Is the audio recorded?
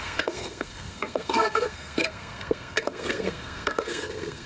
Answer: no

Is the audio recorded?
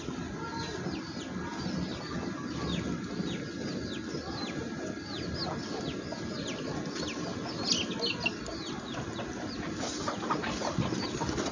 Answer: yes